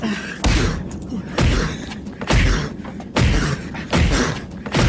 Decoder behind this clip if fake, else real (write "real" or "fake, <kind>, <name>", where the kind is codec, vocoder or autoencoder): real